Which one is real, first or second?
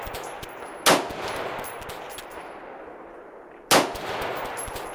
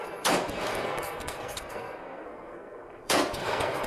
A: first